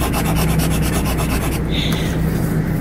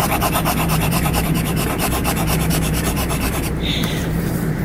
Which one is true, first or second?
first